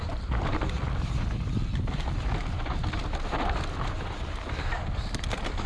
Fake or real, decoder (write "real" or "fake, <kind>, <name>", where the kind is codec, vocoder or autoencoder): real